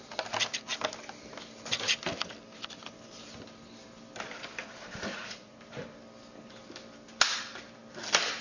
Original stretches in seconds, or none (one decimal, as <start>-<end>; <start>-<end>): 0.0-5.1; 5.6-8.4